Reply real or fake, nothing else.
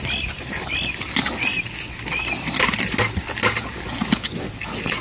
real